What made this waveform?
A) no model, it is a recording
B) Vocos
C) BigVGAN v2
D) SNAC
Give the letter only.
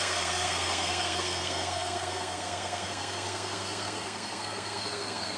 D